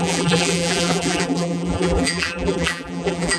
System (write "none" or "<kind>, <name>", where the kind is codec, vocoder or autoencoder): vocoder, BigVGAN v2